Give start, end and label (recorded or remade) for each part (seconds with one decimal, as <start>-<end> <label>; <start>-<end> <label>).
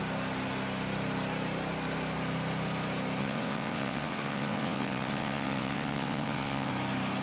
0.0-3.2 recorded; 3.2-6.7 remade; 6.7-7.2 recorded